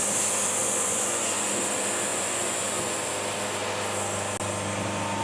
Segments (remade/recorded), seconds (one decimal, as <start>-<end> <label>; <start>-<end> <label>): 0.0-0.6 recorded; 0.6-1.5 remade; 1.5-2.1 recorded; 2.1-3.1 remade; 3.1-5.2 recorded